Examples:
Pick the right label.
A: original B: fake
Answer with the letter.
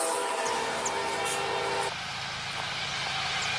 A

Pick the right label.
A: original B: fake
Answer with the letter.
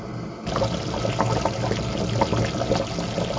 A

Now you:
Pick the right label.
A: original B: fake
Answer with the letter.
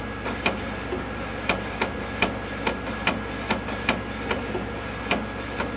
A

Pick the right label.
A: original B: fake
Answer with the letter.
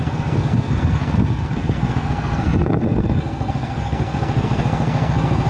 B